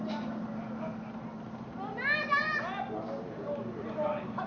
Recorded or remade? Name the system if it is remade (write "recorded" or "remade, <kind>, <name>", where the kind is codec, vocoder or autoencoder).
recorded